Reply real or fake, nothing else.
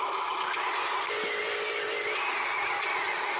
real